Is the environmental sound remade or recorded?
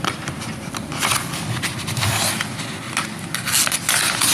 recorded